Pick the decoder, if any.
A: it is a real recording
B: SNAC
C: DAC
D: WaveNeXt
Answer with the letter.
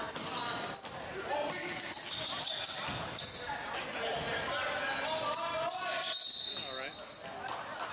A